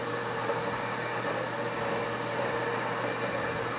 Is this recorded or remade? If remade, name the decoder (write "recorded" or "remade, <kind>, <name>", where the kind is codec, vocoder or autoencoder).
recorded